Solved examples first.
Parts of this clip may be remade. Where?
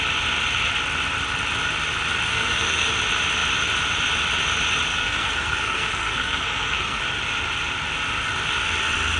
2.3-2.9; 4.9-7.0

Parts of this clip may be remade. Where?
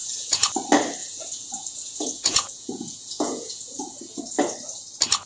0.0-0.5; 1.0-4.2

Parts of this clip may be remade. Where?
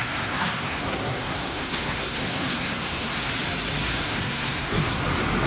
0.0-3.3; 3.8-5.0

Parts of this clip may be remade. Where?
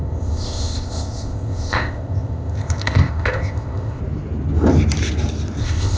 0.0-4.0; 5.6-6.0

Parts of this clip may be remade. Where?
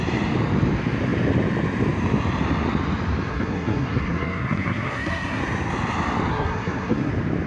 3.3-5.4; 6.3-7.1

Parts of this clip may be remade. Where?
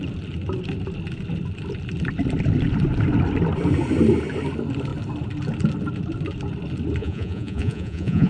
7.0-8.3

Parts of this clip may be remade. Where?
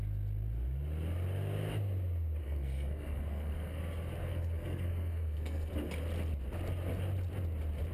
2.4-3.8; 4.2-5.7